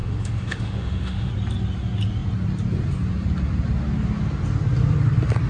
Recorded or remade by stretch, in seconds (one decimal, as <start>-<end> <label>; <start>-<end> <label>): 0.0-1.3 remade; 1.3-5.5 recorded